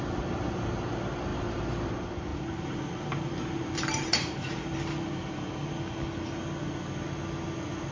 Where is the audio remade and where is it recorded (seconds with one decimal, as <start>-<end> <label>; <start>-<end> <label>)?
0.0-1.3 recorded; 1.3-1.9 remade; 1.9-2.3 recorded; 2.3-5.3 remade; 5.3-7.9 recorded